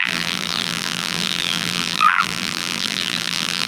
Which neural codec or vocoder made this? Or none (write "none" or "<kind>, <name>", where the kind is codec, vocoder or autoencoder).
vocoder, BigVGAN v2